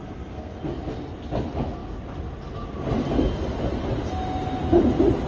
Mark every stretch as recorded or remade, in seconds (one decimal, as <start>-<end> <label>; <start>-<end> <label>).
0.0-0.6 remade; 0.6-5.3 recorded